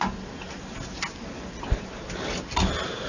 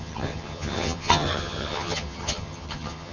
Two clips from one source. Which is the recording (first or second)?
first